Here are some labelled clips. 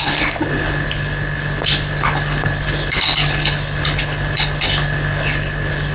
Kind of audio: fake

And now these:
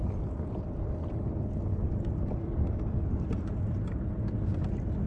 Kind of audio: real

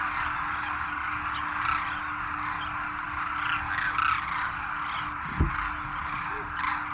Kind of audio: real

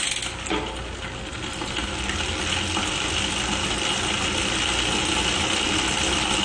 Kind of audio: real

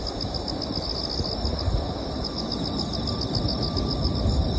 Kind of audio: real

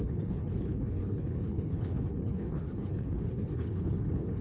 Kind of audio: fake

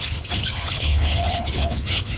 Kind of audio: fake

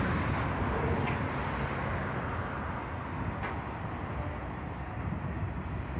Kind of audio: real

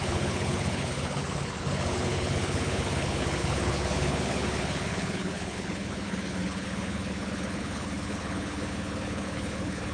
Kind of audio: fake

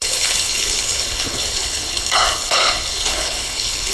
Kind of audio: fake